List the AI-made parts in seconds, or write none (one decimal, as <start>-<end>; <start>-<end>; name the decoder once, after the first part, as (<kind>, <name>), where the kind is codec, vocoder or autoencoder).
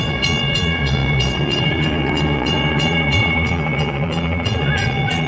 0.0-5.3 (vocoder, Vocos)